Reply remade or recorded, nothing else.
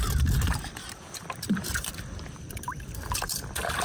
remade